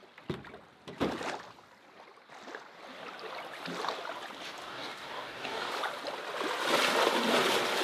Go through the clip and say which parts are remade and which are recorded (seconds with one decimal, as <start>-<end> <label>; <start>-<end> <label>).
0.0-4.6 recorded; 4.6-5.7 remade; 5.7-7.8 recorded